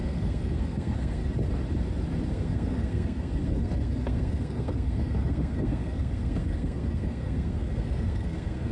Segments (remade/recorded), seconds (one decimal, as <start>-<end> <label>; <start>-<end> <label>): 0.0-1.2 remade; 1.2-2.3 recorded; 2.3-8.7 remade